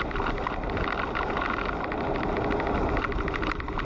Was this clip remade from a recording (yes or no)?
no